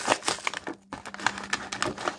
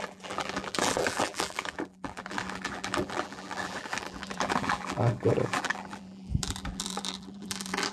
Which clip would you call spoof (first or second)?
second